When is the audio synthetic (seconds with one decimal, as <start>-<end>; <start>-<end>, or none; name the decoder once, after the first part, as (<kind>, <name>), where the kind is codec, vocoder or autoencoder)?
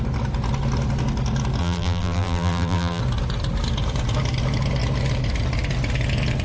1.6-3.0 (vocoder, BigVGAN v2)